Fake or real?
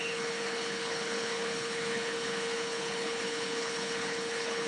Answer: fake